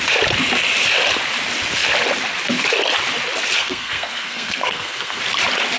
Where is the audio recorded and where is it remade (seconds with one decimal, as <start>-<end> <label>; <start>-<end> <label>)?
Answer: 0.0-3.6 recorded; 3.6-5.2 remade; 5.2-5.8 recorded